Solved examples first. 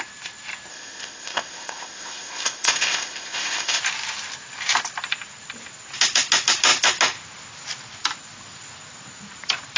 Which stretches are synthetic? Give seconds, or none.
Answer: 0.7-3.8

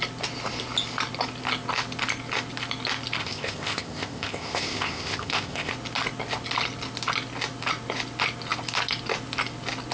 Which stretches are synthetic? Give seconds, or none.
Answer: 3.2-5.7

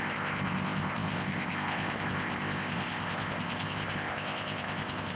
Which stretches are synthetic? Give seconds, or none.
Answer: 0.0-5.2

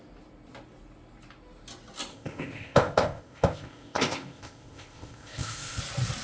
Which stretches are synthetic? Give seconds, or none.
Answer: 2.1-5.8